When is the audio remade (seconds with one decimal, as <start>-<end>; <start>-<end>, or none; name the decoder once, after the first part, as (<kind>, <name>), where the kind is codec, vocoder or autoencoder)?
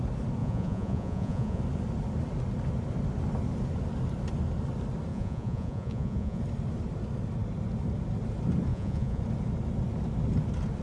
0.4-1.6 (vocoder, Vocos); 5.1-6.4; 8.7-9.2